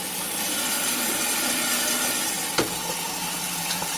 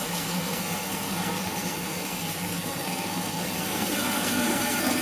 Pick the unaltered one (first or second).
first